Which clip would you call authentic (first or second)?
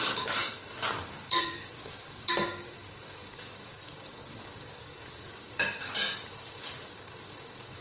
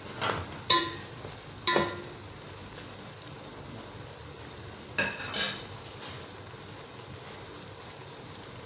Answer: second